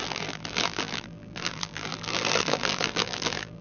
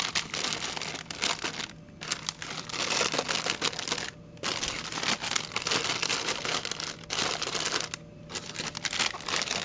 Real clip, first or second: second